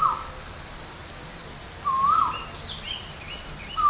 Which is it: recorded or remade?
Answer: recorded